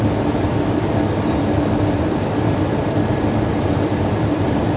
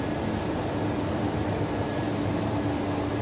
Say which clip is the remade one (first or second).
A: first